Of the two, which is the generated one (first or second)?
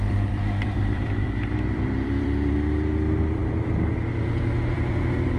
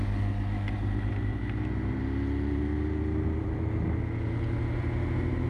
first